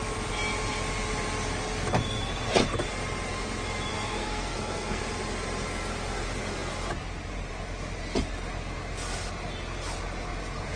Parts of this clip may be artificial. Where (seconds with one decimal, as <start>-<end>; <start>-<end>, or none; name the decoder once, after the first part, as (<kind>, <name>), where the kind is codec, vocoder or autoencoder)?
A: 3.9-5.0 (codec, SNAC)